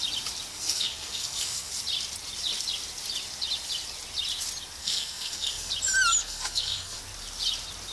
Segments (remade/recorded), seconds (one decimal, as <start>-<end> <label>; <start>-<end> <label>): 0.0-0.5 recorded; 0.5-1.7 remade; 1.7-4.8 recorded; 4.8-5.7 remade; 5.7-6.2 recorded; 6.2-7.0 remade; 7.0-7.9 recorded